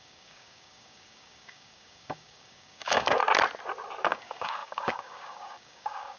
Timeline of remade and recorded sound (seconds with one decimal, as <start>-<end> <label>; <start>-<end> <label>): 0.0-3.2 remade; 3.2-4.0 recorded; 4.0-6.2 remade